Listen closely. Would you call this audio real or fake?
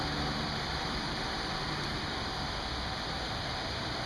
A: fake